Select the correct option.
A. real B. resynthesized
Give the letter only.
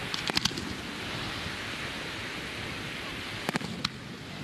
A